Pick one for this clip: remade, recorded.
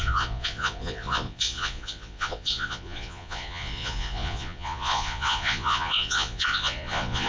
remade